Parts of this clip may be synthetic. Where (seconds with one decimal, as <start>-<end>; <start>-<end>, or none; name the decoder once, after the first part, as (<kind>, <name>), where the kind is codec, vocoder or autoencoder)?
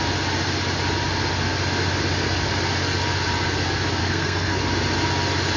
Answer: 4.0-4.6 (codec, SNAC)